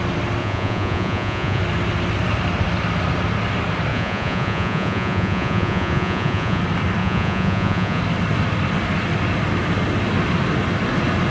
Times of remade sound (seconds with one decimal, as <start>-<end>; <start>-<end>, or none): 0.4-1.6; 3.9-6.6; 7.0-8.0